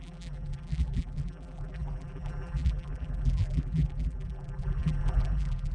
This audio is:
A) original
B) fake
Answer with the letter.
B